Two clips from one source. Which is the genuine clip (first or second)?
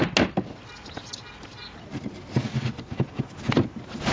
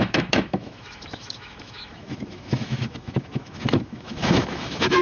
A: first